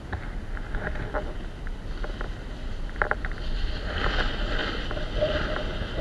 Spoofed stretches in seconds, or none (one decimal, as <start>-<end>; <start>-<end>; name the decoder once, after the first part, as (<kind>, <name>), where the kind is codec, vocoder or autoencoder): none